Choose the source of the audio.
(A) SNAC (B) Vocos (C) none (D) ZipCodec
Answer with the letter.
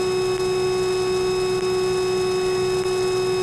C